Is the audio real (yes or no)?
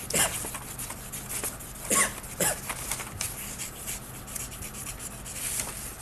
yes